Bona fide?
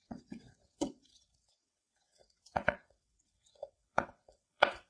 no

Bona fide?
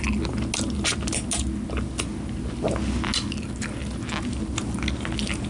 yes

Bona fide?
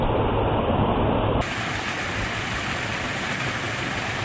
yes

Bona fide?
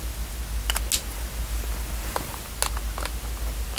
yes